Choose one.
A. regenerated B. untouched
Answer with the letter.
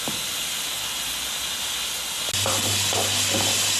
B